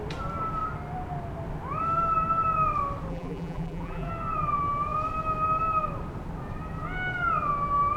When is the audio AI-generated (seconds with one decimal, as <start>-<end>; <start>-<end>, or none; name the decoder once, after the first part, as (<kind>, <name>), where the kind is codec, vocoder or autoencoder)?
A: 3.1-4.1 (vocoder, BigVGAN v2)